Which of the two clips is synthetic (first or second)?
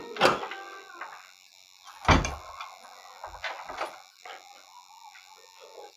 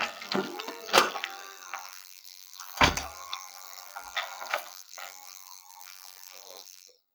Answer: second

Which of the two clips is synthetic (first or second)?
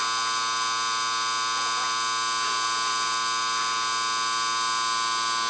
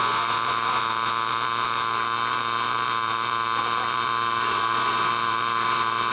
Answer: second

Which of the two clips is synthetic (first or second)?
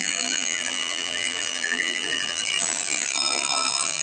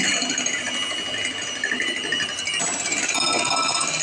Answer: first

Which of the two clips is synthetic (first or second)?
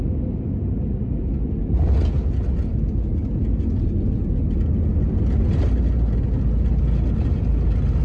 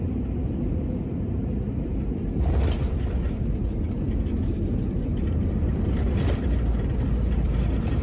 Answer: second